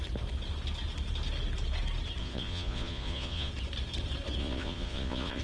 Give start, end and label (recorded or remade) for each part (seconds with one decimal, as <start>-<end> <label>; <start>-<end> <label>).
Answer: 0.0-2.2 recorded; 2.2-3.5 remade; 3.5-4.4 recorded; 4.4-5.4 remade